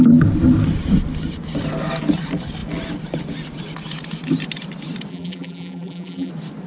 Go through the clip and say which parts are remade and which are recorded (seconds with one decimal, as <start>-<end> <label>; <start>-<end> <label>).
0.0-5.1 recorded; 5.1-6.3 remade; 6.3-6.7 recorded